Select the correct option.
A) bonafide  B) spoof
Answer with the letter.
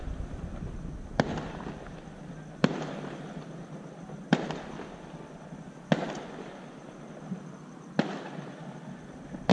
A